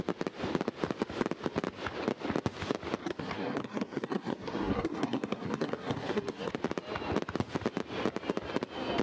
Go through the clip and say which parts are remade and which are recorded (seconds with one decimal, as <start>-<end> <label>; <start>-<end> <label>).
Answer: 0.0-3.0 recorded; 3.0-6.5 remade; 6.5-9.0 recorded